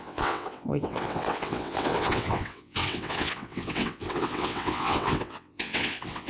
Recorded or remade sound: remade